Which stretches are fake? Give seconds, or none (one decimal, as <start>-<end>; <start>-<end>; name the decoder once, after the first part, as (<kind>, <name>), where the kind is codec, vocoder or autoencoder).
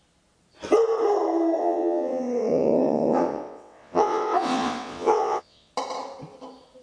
1.6-5.7 (vocoder, WaveNeXt)